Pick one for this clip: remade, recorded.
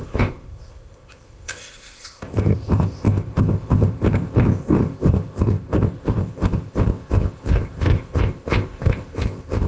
remade